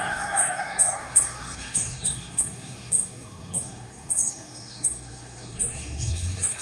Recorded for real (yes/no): no